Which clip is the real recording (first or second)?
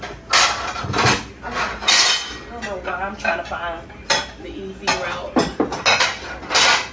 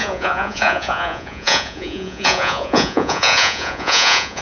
first